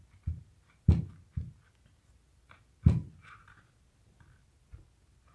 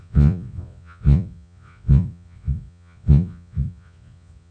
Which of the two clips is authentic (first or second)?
first